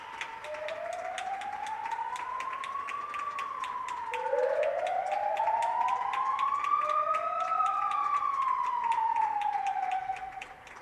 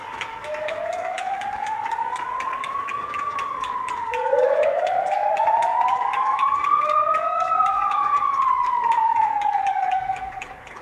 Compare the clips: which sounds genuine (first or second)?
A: first